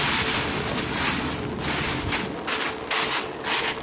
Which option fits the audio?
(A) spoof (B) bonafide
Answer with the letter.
B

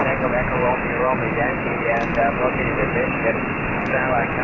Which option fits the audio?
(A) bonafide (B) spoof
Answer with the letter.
B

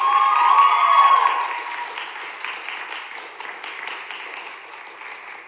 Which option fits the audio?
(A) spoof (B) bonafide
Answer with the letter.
B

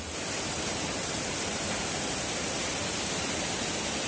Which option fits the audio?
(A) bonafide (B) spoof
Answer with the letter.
A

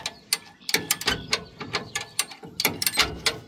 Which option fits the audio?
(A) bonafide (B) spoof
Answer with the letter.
A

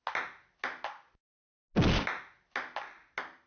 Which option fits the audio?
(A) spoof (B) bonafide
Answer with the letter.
B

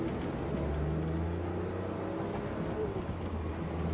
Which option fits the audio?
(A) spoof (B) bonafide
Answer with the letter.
B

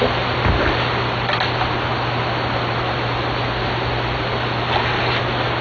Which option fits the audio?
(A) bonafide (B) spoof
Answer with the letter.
A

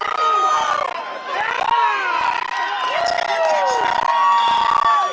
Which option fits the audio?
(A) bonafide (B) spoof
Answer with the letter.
A